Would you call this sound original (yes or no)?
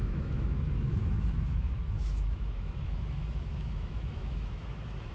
no